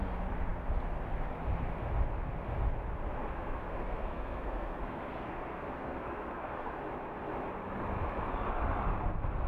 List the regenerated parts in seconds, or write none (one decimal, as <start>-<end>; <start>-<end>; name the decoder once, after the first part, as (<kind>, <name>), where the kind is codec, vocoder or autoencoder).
3.2-6.8 (codec, SNAC)